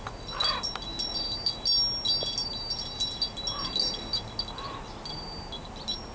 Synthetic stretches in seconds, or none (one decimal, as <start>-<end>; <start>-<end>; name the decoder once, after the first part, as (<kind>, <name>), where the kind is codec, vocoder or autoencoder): none